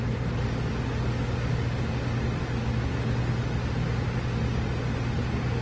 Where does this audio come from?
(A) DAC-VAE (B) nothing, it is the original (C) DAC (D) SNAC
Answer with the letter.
B